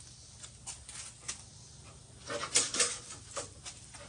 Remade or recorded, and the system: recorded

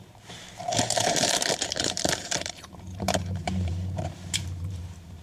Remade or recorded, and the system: remade, vocoder, BigVGAN v2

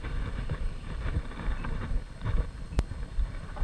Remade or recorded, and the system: remade, vocoder, BigVGAN v2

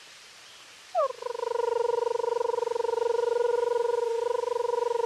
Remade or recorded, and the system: remade, vocoder, BigVGAN v2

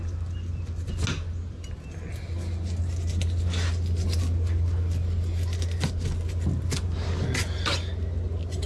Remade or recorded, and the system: recorded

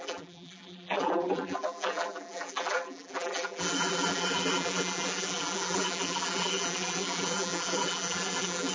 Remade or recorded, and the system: remade, vocoder, BigVGAN v2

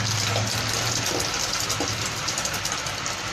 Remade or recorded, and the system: recorded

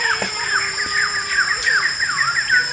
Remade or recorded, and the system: remade, vocoder, BigVGAN v2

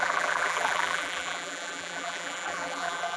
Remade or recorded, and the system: remade, vocoder, BigVGAN v2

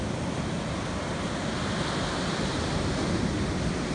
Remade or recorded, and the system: recorded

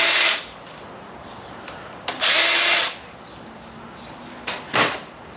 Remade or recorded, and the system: recorded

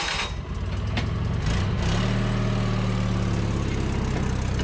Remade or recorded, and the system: recorded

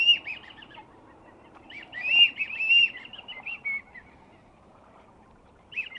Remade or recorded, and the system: remade, vocoder, BigVGAN v2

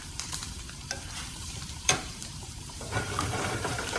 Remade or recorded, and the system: remade, vocoder, BigVGAN v2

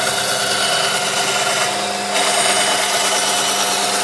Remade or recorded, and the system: recorded